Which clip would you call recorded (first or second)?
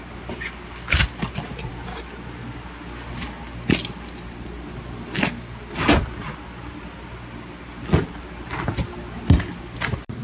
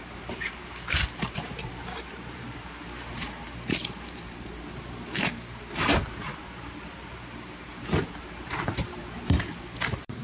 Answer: first